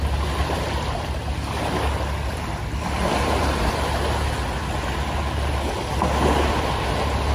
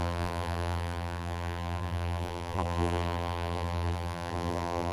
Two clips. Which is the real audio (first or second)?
first